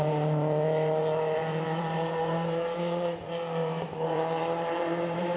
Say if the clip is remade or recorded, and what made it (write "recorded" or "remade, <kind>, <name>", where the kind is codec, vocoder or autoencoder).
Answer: remade, vocoder, BigVGAN v2